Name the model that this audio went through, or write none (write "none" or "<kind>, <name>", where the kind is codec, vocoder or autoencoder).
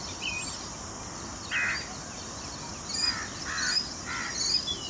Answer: none